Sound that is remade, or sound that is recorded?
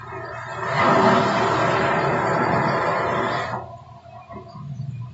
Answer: recorded